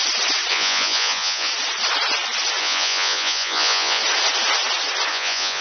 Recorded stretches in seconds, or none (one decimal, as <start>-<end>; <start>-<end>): 0.0-0.5; 1.5-2.6; 4.0-5.1